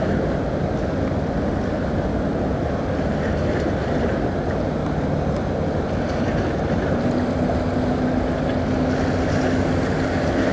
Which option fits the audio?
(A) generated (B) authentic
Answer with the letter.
B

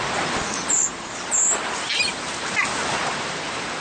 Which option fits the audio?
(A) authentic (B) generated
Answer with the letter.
A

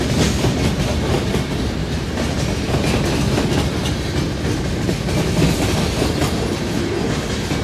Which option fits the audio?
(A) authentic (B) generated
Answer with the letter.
A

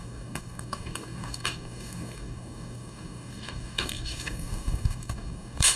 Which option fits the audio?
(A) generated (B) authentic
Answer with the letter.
A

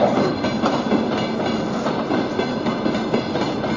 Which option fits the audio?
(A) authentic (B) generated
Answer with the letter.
A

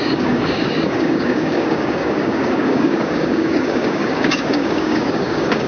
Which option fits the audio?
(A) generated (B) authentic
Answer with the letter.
A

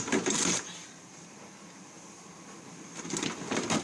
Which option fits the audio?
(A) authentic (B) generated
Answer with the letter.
B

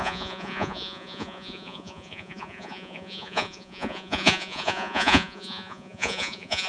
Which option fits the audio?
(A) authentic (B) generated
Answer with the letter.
B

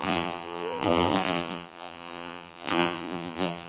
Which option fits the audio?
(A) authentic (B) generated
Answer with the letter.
B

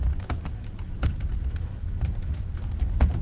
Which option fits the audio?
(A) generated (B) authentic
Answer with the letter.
A